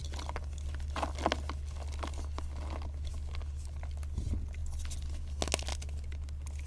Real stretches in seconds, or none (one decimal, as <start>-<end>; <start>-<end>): 0.0-6.7